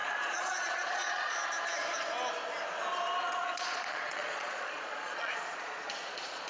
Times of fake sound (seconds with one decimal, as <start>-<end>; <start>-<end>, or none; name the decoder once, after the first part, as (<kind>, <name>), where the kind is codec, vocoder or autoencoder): 0.0-1.4 (vocoder, Vocos); 3.2-6.5